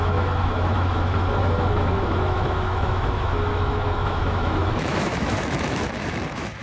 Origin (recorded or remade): remade